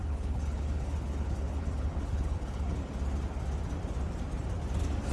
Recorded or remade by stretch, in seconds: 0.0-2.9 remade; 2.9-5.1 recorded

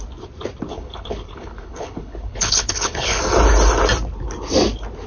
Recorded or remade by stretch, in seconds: 0.0-0.7 recorded; 0.7-3.2 remade; 3.2-5.1 recorded

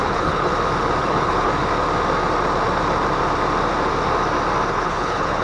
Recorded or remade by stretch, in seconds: 0.0-0.5 remade; 0.5-1.0 recorded; 1.0-1.5 remade; 1.5-4.7 recorded; 4.7-5.4 remade

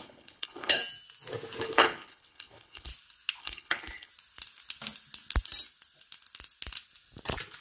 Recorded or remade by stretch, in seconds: 0.0-0.8 remade; 0.8-1.6 recorded; 1.6-2.9 remade; 2.9-3.4 recorded; 3.4-4.1 remade; 4.1-7.6 recorded

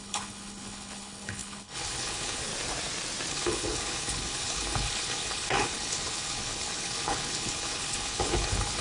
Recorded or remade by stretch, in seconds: 0.0-2.5 remade; 2.5-3.3 recorded; 3.3-8.8 remade

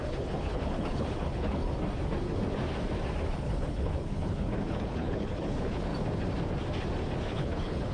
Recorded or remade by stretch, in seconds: 0.0-1.6 remade; 1.6-3.3 recorded; 3.3-5.9 remade; 5.9-7.3 recorded; 7.3-7.9 remade